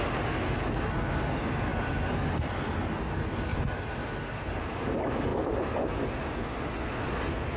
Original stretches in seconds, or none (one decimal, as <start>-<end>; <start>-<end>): 0.0-7.6